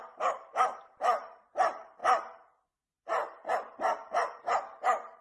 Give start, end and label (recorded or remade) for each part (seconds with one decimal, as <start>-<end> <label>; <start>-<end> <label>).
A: 0.0-2.0 remade; 2.0-4.4 recorded; 4.4-5.2 remade